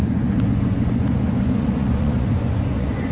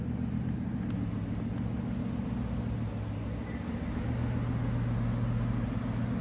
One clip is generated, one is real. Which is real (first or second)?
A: second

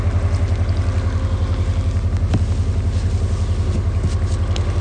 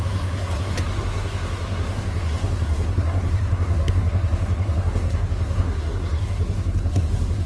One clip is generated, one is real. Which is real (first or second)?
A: first